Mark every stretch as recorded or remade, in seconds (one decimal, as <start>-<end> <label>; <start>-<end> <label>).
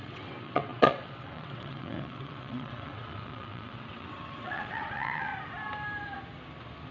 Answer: 0.0-5.3 remade; 5.3-6.9 recorded